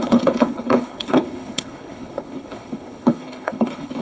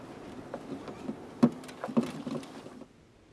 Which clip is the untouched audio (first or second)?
second